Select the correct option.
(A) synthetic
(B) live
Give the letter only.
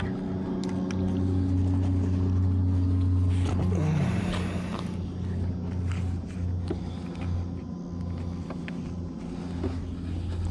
B